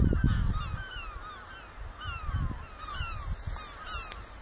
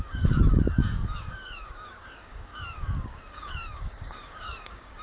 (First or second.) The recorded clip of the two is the first